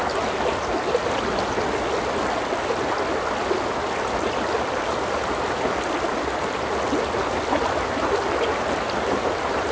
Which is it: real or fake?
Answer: real